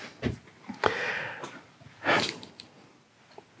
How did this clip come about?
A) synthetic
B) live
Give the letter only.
B